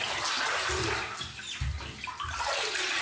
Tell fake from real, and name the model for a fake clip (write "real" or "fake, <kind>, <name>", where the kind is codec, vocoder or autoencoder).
real